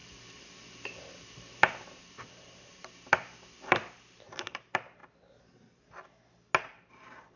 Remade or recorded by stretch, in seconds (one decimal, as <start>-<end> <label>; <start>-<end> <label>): 0.0-5.0 remade; 5.0-6.9 recorded; 6.9-7.4 remade